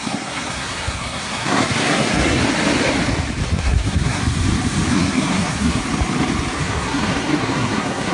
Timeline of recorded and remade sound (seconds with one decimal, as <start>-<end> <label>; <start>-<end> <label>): 0.0-2.4 remade; 2.4-3.5 recorded; 3.5-4.2 remade; 4.2-4.9 recorded; 4.9-5.8 remade; 5.8-6.6 recorded; 6.6-8.1 remade

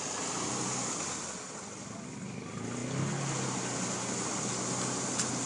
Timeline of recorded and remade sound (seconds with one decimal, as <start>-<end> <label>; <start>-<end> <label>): 0.0-5.5 recorded